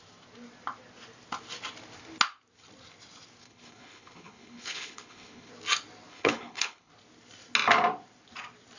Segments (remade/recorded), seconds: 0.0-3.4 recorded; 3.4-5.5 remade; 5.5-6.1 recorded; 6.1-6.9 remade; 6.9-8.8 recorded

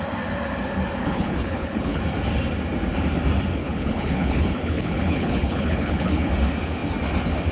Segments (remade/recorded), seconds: 0.0-1.0 recorded; 1.0-2.0 remade; 2.0-3.6 recorded; 3.6-6.3 remade; 6.3-7.5 recorded

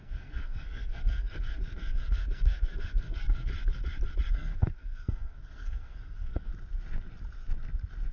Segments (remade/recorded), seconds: 0.0-3.5 remade; 3.5-4.3 recorded; 4.3-6.5 remade; 6.5-8.1 recorded

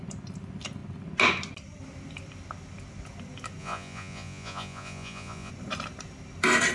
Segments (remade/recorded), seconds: 0.0-3.6 recorded; 3.6-5.5 remade; 5.5-6.7 recorded